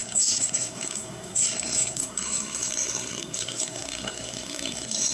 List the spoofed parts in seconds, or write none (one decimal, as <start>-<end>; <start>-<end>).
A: 0.0-5.1